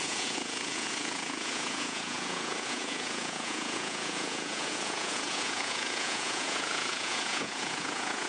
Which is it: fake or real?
fake